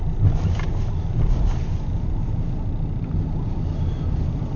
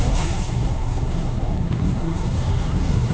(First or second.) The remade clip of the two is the second